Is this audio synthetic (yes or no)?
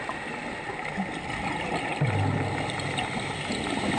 no